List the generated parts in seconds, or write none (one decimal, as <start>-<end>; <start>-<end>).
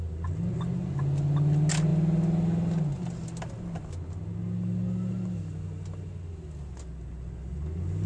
none